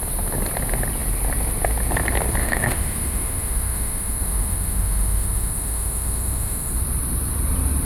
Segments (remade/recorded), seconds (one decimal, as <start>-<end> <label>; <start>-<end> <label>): 0.0-2.4 recorded; 2.4-6.7 remade; 6.7-7.8 recorded